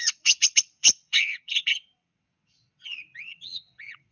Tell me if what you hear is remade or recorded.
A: remade